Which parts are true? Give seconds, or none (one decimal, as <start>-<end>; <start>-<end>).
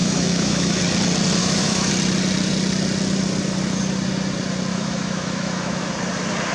0.8-1.4; 1.9-4.7; 5.9-6.5